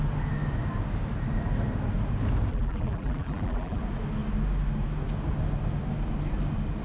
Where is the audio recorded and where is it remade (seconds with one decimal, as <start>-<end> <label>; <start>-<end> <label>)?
0.0-2.5 recorded; 2.5-3.8 remade; 3.8-6.8 recorded